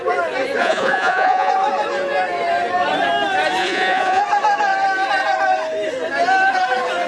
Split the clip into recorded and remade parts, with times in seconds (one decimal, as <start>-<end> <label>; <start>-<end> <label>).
0.0-0.6 recorded; 0.6-1.5 remade; 1.5-3.6 recorded; 3.6-4.2 remade; 4.2-7.1 recorded